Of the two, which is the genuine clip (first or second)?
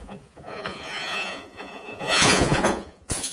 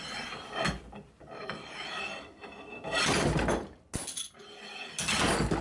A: second